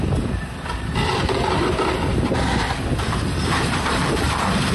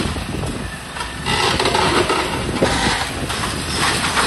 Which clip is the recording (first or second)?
second